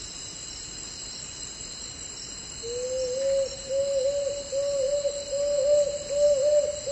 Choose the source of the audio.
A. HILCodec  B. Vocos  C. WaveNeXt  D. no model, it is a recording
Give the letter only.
D